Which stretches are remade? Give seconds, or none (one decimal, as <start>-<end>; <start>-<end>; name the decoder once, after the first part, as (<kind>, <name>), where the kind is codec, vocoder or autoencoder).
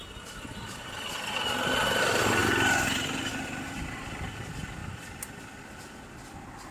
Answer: 4.8-5.4 (vocoder, BigVGAN v2)